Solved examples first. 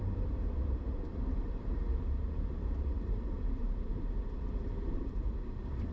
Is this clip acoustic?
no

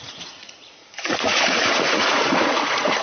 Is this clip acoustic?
no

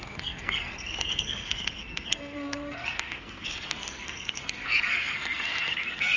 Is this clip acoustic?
no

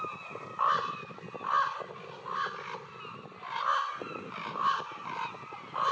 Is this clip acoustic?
yes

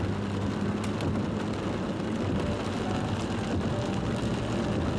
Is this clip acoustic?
yes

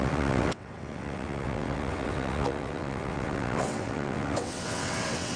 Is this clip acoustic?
no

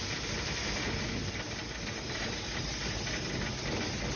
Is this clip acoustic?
yes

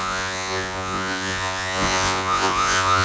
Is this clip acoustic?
no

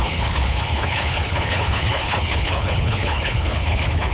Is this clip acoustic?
no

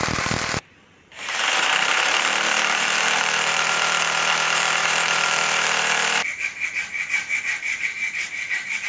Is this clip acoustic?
no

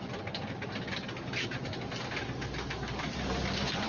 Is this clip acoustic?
yes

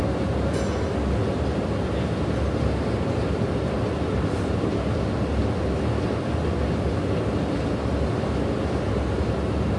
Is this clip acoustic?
yes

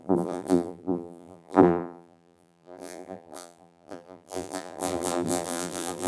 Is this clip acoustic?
no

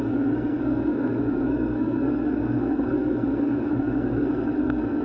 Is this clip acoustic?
no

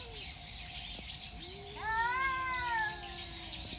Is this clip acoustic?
yes